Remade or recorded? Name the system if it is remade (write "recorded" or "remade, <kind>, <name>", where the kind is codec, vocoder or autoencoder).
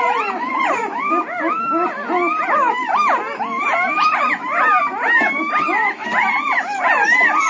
recorded